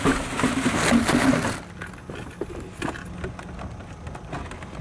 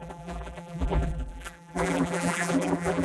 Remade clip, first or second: second